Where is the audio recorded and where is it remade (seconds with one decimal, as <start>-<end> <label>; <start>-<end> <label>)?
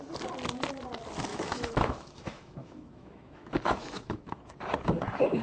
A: 0.0-1.3 recorded; 1.3-4.5 remade; 4.5-5.4 recorded